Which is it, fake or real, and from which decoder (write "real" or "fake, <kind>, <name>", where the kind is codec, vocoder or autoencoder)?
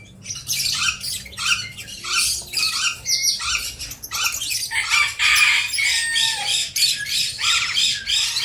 real